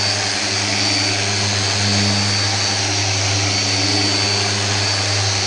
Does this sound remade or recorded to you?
recorded